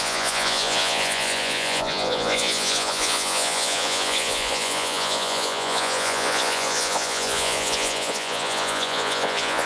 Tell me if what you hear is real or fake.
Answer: fake